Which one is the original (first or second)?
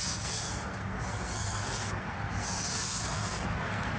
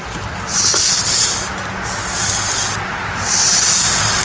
second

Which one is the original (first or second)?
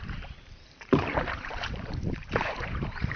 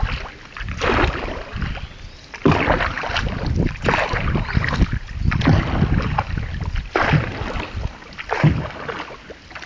second